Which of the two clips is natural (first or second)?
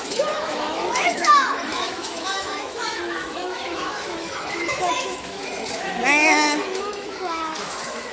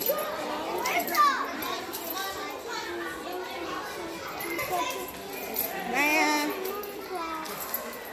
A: second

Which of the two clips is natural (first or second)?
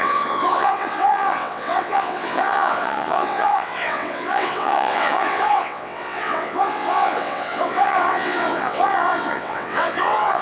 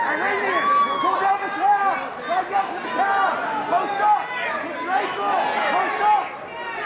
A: second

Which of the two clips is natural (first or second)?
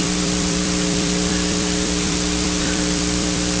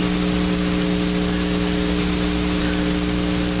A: second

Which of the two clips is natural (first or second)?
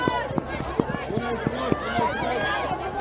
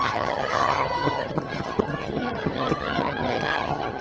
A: first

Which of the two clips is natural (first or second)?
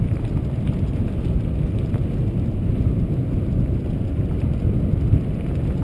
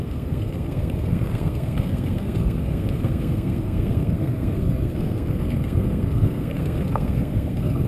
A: first